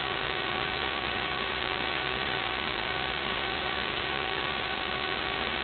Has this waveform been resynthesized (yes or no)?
yes